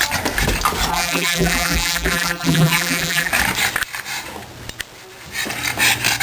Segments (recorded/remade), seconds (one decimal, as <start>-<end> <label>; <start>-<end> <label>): 0.0-0.9 recorded; 0.9-3.3 remade; 3.3-6.2 recorded